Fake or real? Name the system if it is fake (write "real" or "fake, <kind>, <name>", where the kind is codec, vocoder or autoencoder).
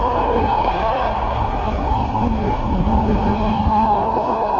fake, codec, SNAC